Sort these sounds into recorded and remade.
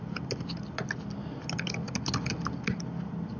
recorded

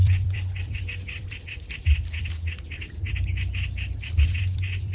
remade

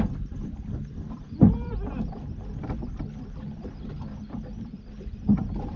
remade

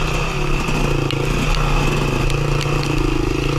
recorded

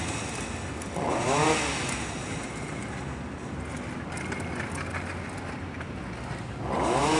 recorded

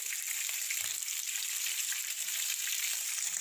remade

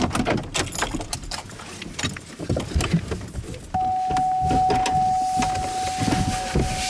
recorded